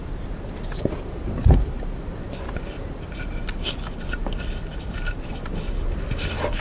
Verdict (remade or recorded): remade